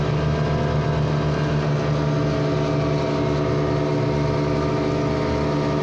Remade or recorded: recorded